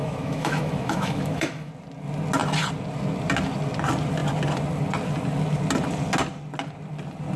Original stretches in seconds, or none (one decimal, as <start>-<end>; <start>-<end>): 1.7-7.4